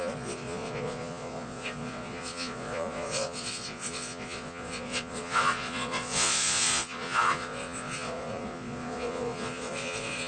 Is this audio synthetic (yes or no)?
yes